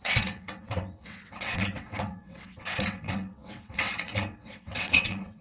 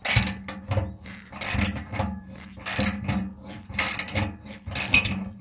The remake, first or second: first